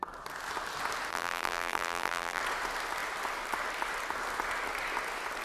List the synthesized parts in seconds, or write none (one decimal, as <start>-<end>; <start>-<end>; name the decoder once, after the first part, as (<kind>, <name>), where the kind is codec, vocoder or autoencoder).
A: 1.1-2.4 (vocoder, BigVGAN v2)

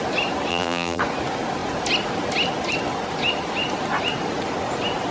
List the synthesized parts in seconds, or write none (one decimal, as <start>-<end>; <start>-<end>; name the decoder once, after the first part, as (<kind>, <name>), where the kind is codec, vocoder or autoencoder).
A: 0.5-1.0 (vocoder, BigVGAN v2)